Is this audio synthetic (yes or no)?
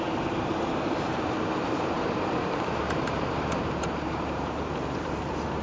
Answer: yes